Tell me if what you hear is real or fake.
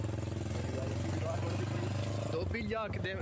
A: real